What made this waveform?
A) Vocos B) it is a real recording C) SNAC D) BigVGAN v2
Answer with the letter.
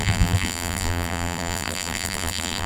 D